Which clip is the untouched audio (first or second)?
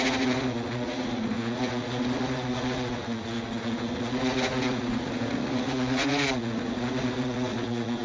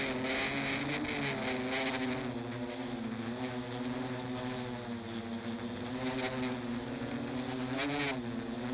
second